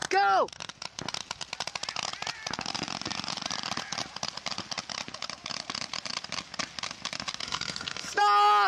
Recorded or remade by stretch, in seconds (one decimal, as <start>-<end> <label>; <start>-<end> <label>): 0.0-7.4 recorded; 7.4-8.2 remade; 8.2-8.7 recorded